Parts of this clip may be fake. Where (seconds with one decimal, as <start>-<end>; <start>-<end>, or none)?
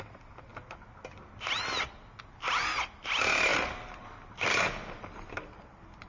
none